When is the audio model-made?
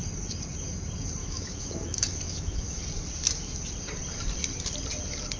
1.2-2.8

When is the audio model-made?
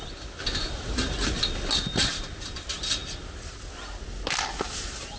none